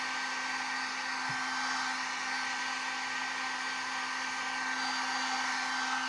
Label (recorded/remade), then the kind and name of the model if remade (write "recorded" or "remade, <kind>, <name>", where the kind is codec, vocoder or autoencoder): recorded